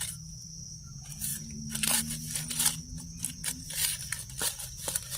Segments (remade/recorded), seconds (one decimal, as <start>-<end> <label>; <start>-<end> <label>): 0.0-1.3 recorded; 1.3-2.0 remade; 2.0-5.2 recorded